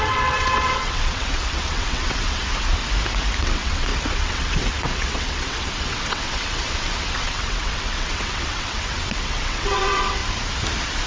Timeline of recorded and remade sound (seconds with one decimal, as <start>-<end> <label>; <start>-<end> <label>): 0.0-2.8 remade; 2.8-3.4 recorded; 3.4-10.2 remade; 10.2-11.1 recorded